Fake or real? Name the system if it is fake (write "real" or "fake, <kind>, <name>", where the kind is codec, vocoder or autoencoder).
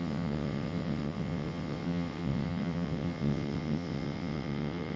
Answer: fake, vocoder, WaveNeXt